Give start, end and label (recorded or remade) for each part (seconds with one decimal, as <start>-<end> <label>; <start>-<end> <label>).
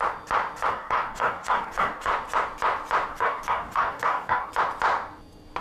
0.0-0.7 recorded; 0.7-2.1 remade; 2.1-3.1 recorded; 3.1-4.5 remade; 4.5-5.6 recorded